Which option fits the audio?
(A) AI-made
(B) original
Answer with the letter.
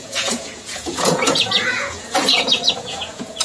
A